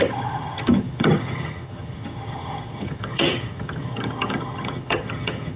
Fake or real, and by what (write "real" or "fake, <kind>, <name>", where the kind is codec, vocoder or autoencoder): fake, vocoder, HiFi-GAN